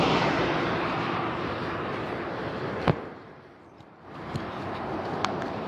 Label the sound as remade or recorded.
remade